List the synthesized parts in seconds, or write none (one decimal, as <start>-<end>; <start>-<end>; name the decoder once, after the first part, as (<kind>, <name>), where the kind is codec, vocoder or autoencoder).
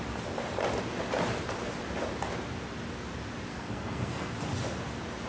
3.5-4.3 (codec, SNAC)